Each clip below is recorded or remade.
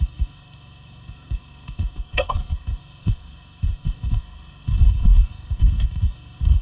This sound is remade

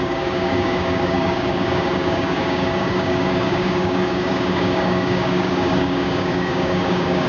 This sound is remade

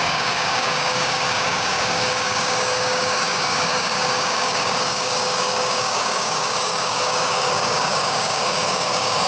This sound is remade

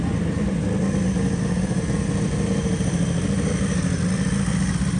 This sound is recorded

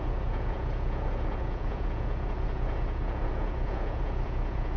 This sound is remade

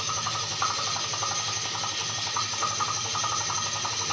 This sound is recorded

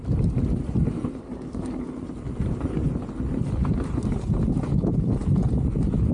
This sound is recorded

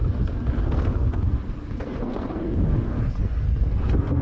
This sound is remade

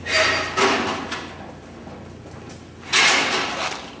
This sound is recorded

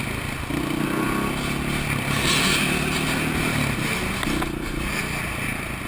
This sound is recorded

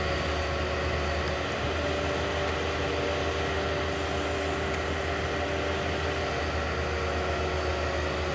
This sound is recorded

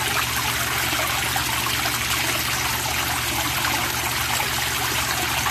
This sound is recorded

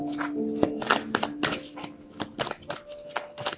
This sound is recorded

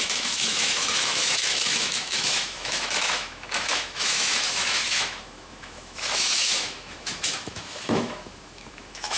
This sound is remade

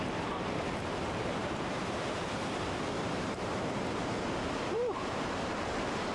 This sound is remade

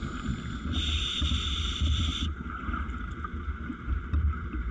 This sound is recorded